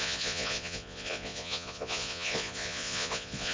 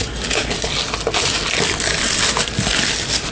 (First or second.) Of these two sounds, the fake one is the first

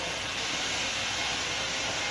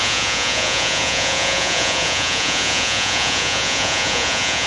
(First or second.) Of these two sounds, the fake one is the second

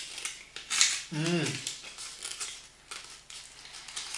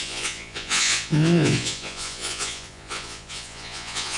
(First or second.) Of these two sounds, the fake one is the second